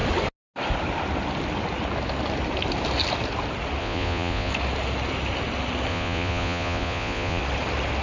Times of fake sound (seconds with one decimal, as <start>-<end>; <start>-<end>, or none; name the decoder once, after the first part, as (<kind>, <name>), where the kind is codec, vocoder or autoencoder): 3.8-4.5 (vocoder, Vocos); 5.9-7.4